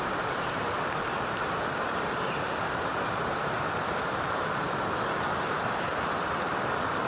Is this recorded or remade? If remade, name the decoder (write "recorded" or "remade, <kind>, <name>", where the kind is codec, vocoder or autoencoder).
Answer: remade, vocoder, BigVGAN v2